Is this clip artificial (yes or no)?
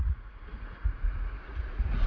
yes